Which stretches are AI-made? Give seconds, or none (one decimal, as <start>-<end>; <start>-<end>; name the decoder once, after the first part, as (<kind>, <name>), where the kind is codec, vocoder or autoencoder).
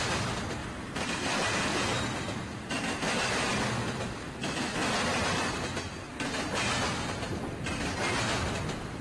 0.0-4.8 (vocoder, BigVGAN v2); 5.4-9.0